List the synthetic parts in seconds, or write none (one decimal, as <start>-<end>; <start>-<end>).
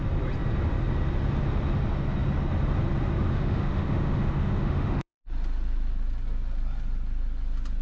3.3-5.2